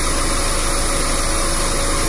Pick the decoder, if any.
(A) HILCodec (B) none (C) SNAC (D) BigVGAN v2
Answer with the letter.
B